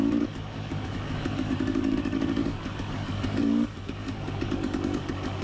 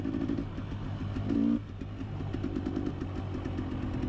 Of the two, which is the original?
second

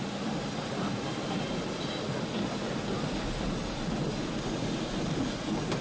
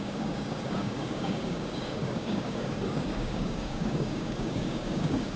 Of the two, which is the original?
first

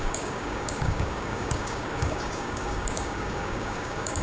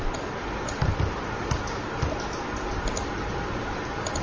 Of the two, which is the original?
second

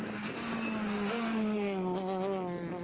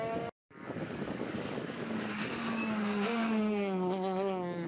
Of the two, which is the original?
first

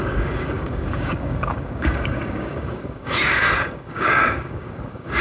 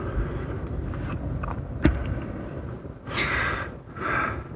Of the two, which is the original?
second